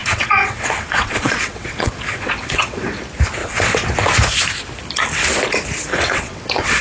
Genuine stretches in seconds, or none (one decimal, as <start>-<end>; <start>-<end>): 3.0-3.4; 3.9-5.9

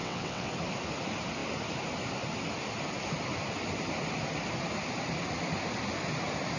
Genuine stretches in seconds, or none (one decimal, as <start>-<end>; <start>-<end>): 0.5-6.6

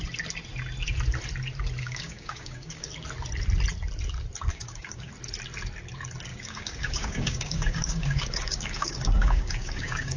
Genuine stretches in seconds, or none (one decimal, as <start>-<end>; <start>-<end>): 0.0-1.8; 2.9-4.5; 5.1-6.3

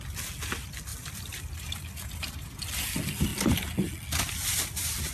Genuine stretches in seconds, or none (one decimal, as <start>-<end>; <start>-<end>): 0.0-5.1

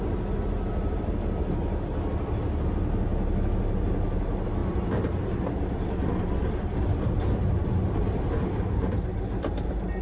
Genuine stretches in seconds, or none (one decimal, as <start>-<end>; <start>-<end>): 0.0-10.0

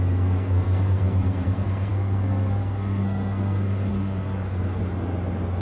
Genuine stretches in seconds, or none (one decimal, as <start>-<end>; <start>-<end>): 4.8-5.6